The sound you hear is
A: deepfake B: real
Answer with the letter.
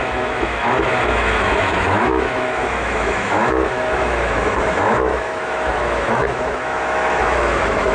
A